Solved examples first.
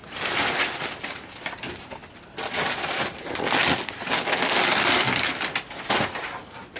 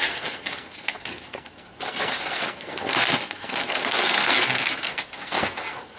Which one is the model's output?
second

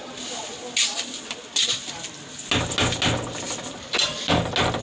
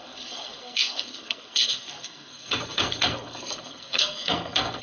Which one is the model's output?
second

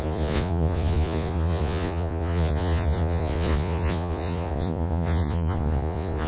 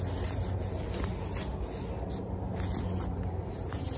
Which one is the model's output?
first